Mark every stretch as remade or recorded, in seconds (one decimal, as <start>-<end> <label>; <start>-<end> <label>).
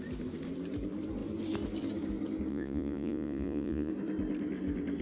0.0-2.5 recorded; 2.5-3.9 remade; 3.9-5.0 recorded